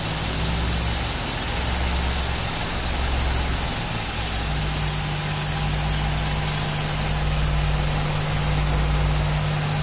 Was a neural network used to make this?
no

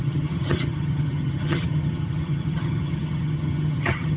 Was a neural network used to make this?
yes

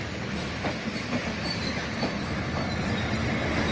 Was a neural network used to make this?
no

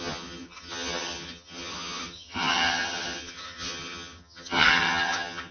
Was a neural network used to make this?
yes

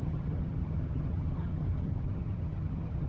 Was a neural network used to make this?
yes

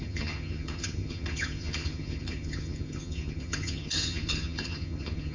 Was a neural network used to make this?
yes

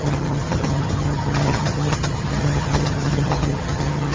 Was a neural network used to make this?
yes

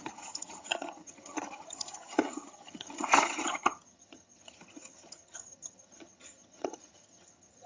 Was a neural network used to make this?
yes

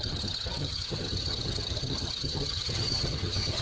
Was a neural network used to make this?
yes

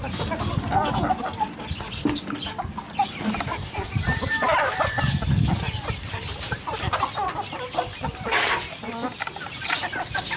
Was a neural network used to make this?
no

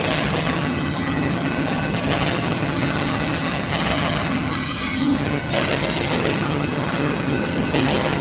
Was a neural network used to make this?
yes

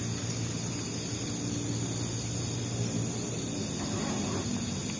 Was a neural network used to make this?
no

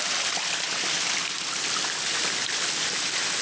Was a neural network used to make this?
no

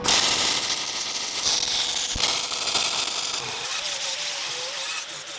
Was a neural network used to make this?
no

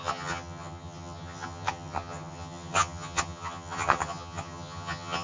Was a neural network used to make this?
yes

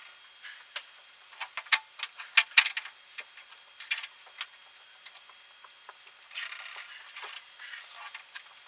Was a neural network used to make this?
no